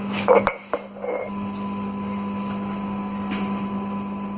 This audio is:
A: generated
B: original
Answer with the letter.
B